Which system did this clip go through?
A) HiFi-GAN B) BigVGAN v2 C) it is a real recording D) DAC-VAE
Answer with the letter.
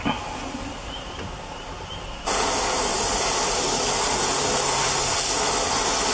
C